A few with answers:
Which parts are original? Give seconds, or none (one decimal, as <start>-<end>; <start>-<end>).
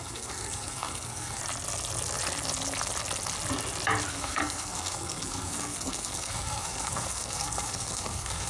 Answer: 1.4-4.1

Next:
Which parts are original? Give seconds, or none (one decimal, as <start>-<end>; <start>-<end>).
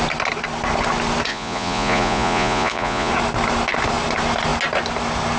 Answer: 0.0-1.3; 3.1-5.4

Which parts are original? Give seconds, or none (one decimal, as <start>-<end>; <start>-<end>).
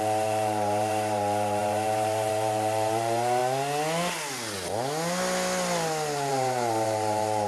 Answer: 3.4-6.3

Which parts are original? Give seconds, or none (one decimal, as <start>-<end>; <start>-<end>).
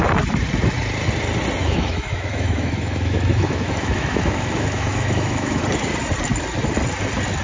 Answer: 0.0-1.6; 5.6-7.4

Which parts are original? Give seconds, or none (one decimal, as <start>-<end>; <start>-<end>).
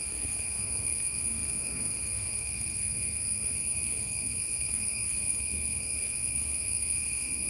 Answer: none